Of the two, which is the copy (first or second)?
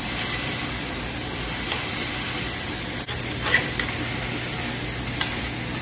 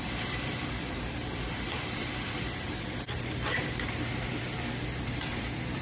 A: second